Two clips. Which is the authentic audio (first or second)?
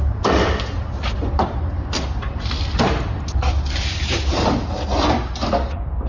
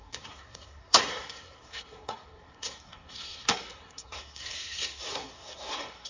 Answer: first